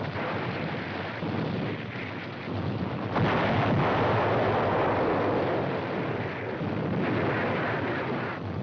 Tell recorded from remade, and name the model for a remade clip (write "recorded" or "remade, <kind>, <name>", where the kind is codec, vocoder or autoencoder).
recorded